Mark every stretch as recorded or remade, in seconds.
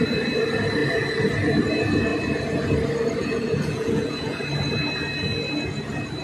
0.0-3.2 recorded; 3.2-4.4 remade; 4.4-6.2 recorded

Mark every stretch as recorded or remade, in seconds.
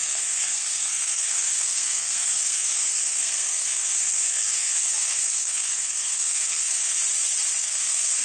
0.0-7.0 remade; 7.0-7.6 recorded; 7.6-8.2 remade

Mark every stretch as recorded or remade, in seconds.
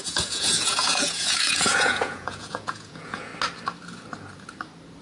0.0-3.3 remade; 3.3-5.0 recorded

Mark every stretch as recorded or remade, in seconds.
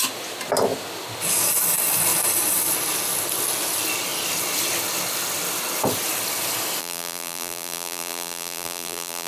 0.0-6.8 recorded; 6.8-9.3 remade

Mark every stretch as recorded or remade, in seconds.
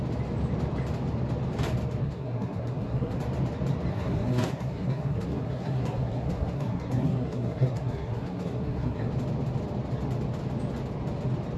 0.0-2.0 recorded; 2.0-3.2 remade; 3.2-3.9 recorded; 3.9-9.1 remade; 9.1-11.6 recorded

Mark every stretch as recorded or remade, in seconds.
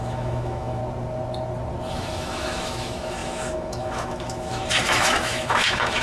0.0-0.8 remade; 0.8-1.9 recorded; 1.9-6.0 remade